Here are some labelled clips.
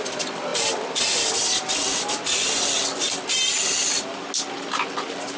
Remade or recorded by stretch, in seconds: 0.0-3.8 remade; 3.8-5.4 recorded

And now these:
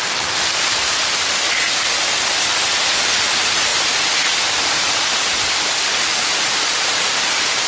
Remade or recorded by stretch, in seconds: 0.0-5.9 recorded; 5.9-7.3 remade; 7.3-7.7 recorded

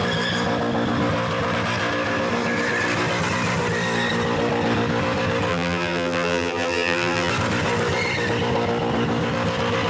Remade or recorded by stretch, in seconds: 0.0-5.5 recorded; 5.5-7.3 remade; 7.3-9.9 recorded

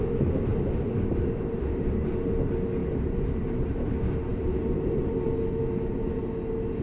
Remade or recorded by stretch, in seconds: 0.0-2.8 recorded; 2.8-3.9 remade; 3.9-4.3 recorded; 4.3-5.1 remade; 5.1-6.8 recorded